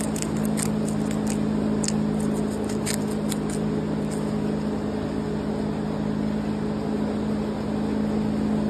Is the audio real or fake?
real